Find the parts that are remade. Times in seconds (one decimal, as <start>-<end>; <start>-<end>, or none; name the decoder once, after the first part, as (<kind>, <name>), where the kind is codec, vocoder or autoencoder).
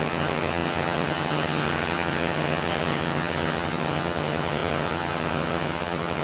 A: 0.0-6.2 (vocoder, HiFi-GAN)